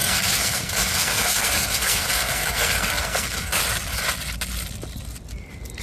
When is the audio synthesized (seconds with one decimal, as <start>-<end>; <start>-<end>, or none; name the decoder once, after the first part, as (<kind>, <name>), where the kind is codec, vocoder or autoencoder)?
0.0-3.6 (codec, SNAC)